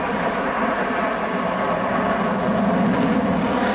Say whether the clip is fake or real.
real